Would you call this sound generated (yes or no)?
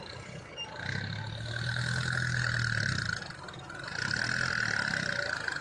no